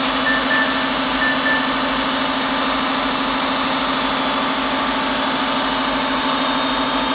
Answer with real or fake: real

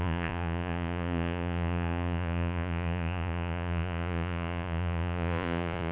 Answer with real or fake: fake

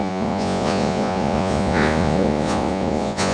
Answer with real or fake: fake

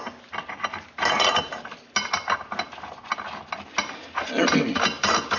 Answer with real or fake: real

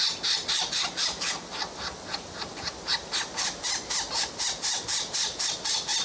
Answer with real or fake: real